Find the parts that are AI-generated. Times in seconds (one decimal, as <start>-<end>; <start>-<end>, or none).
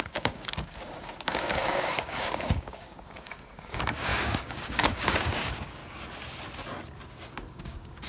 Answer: 0.0-5.8; 7.5-8.1